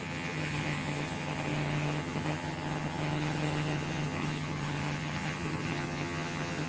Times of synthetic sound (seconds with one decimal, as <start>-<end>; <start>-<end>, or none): 0.0-6.7